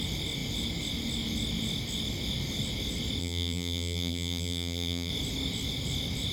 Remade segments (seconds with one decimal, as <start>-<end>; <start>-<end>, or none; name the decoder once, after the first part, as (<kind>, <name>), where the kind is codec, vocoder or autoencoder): 3.2-5.1 (vocoder, BigVGAN v2)